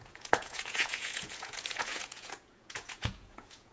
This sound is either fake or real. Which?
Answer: fake